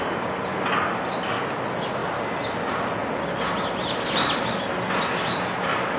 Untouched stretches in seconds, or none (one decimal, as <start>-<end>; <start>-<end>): 0.0-6.0